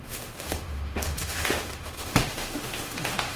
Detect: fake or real fake